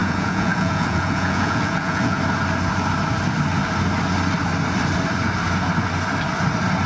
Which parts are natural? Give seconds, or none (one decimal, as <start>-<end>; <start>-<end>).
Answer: 2.2-6.9